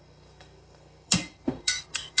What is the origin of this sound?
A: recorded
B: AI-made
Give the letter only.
B